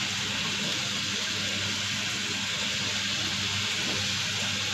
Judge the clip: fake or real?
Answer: real